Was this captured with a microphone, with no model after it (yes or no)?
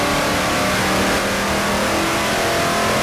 yes